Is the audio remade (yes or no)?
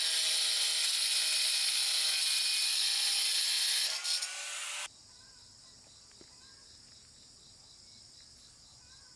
no